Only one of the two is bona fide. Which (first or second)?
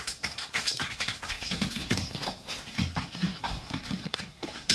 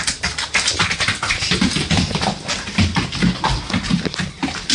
second